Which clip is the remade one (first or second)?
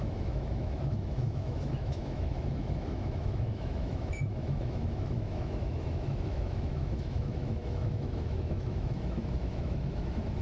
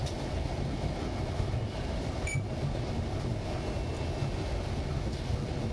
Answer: first